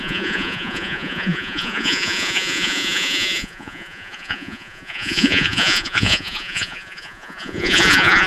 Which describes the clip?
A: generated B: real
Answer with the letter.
A